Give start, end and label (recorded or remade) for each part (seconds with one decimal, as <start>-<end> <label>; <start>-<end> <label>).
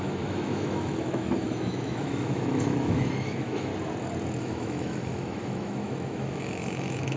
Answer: 0.0-3.7 remade; 3.7-4.4 recorded; 4.4-7.2 remade